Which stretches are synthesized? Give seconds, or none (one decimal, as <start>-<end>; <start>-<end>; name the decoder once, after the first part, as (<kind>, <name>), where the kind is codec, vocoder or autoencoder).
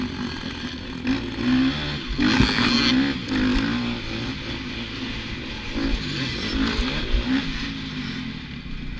none